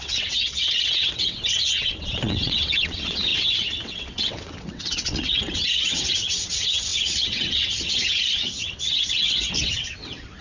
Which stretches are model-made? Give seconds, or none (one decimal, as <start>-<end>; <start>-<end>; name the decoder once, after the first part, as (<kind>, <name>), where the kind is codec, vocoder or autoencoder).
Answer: 0.0-10.4 (vocoder, WaveNeXt)